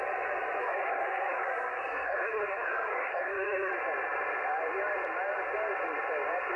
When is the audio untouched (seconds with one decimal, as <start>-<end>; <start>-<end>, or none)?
0.0-0.6; 3.7-6.6